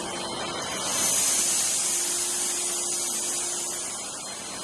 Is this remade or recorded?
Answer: recorded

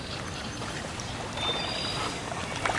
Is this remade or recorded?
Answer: recorded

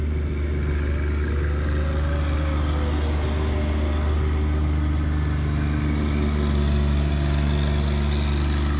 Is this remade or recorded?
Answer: recorded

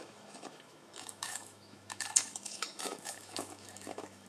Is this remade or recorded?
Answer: remade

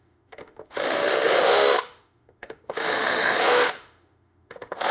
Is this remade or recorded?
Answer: remade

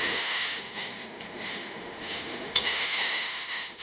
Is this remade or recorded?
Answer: remade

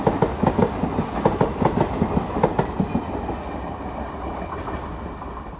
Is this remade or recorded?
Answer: recorded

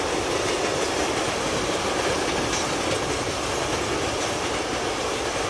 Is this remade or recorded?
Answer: recorded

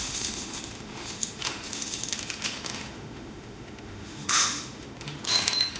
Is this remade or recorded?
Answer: remade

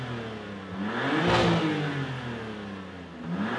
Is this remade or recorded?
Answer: recorded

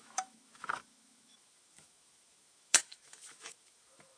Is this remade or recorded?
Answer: remade